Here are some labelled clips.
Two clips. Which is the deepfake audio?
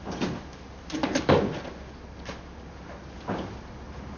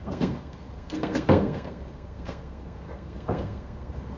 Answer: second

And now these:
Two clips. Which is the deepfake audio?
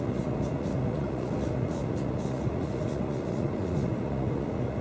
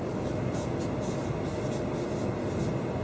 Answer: first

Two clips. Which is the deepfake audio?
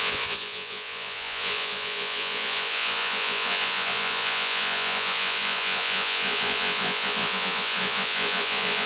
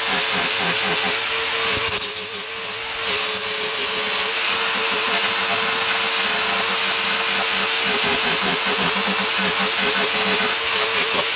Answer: first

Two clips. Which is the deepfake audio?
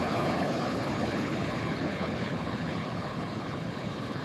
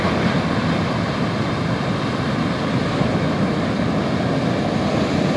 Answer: first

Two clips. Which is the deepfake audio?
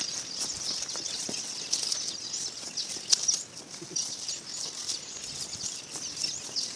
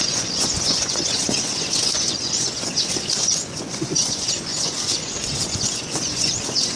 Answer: second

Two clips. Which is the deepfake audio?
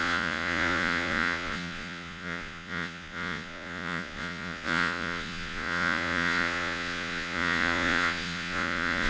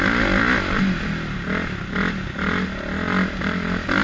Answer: first